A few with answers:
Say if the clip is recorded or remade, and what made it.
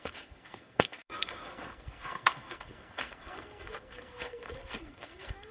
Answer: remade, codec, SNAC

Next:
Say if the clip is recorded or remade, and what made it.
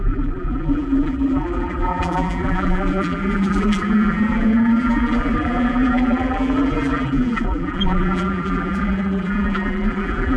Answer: remade, vocoder, BigVGAN v2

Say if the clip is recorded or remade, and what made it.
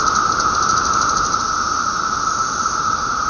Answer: recorded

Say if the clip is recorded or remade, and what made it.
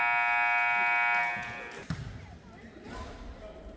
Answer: recorded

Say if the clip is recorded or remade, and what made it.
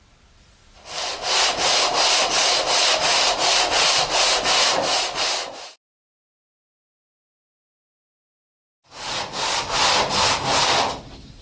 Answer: recorded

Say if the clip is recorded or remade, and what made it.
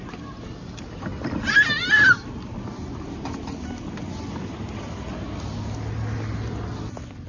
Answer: recorded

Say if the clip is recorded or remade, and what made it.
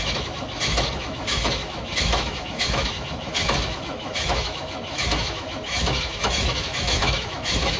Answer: remade, autoencoder, DAC-VAE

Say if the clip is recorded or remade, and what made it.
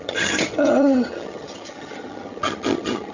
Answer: remade, vocoder, HiFi-GAN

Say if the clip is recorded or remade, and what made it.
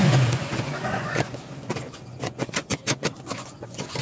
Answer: remade, vocoder, Vocos